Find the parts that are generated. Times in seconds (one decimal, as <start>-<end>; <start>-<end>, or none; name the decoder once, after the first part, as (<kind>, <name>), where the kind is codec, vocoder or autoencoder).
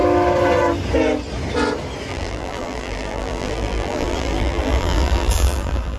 2.1-6.0 (vocoder, BigVGAN v2)